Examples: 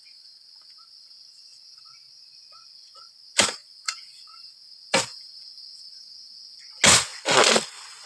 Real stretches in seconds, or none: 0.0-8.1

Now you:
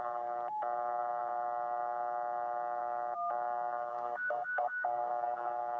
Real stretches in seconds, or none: 0.0-3.9; 5.1-5.8

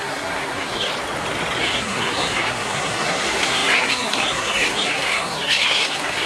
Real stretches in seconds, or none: 0.9-1.6

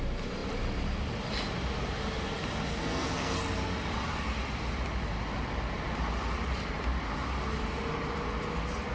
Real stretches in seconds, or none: 0.0-2.7; 3.4-8.9

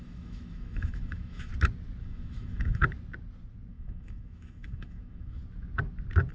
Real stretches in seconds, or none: 1.5-2.0; 2.8-3.7; 5.4-6.3